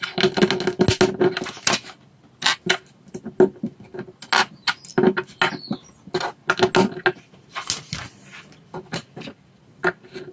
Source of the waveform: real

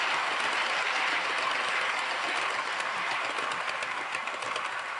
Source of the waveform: real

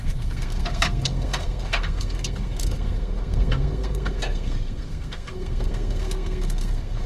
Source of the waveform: fake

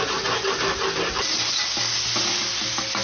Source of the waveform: real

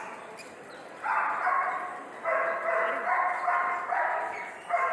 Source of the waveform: real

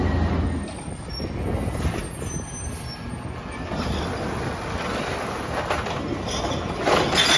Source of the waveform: real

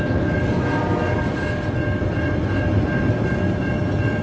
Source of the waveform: real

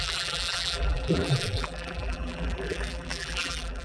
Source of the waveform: fake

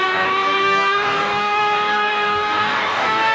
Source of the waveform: fake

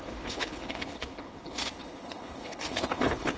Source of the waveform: fake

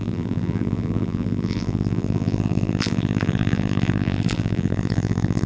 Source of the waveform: fake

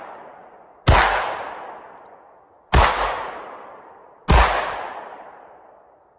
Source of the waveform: real